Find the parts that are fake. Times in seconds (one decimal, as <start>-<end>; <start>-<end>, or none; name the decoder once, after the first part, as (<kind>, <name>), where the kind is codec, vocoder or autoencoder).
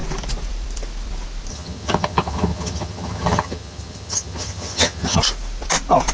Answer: 1.5-5.2 (vocoder, HiFi-GAN)